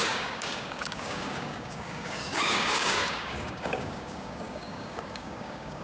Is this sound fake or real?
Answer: fake